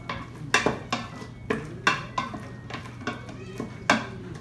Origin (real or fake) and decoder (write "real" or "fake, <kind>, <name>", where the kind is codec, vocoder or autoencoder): real